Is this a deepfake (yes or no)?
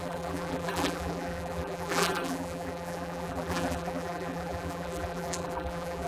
yes